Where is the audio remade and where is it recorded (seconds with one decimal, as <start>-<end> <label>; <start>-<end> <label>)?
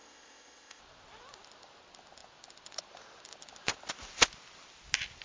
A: 0.0-0.8 remade; 0.8-5.2 recorded